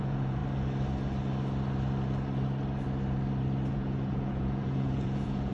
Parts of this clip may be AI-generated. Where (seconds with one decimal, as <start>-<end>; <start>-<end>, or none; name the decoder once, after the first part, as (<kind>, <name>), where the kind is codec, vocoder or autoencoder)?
0.0-0.4 (vocoder, Vocos); 3.7-5.5